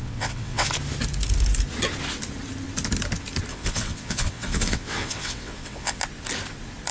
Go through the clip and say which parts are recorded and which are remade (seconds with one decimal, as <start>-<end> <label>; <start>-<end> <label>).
0.0-0.7 remade; 0.7-3.5 recorded; 3.5-6.0 remade; 6.0-6.9 recorded